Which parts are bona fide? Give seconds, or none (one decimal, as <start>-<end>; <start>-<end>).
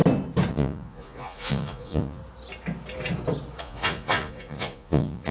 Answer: 0.0-0.5; 2.2-3.6